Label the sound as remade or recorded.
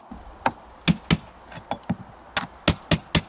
recorded